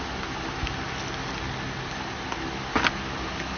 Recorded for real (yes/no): yes